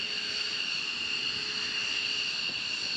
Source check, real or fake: real